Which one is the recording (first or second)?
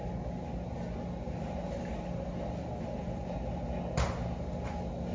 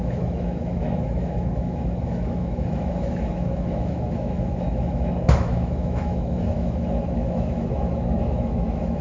first